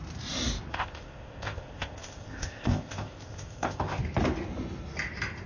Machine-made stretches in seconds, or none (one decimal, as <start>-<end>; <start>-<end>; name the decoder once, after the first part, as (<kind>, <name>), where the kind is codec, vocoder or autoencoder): 0.7-4.0 (codec, ZipCodec)